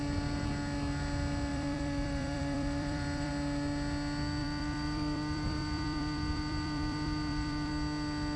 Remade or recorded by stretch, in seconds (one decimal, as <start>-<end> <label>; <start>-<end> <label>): 0.0-1.5 recorded; 1.5-3.3 remade; 3.3-4.4 recorded; 4.4-7.7 remade; 7.7-8.4 recorded